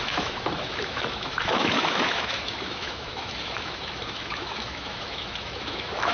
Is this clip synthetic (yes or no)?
yes